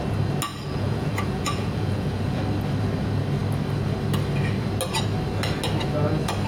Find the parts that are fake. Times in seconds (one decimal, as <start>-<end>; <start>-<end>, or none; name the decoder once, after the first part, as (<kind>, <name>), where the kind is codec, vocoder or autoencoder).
0.5-2.4 (vocoder, Vocos)